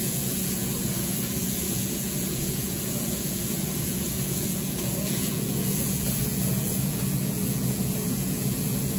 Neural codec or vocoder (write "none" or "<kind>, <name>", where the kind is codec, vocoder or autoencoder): vocoder, Vocos